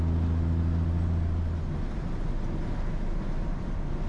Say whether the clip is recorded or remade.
recorded